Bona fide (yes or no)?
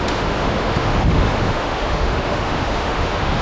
no